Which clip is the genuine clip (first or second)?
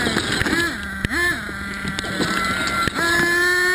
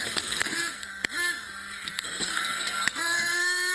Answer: first